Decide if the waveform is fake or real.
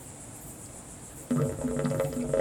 real